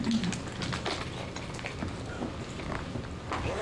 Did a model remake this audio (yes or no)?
no